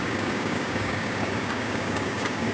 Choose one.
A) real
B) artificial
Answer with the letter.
B